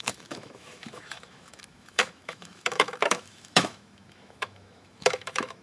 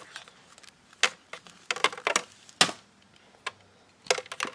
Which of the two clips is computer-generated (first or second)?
first